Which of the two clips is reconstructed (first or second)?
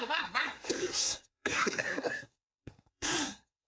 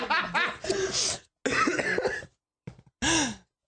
first